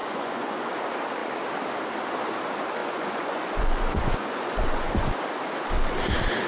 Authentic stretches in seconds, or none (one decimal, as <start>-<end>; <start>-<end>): 0.7-2.8; 5.1-6.5